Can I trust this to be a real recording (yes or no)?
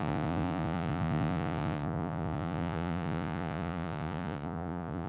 no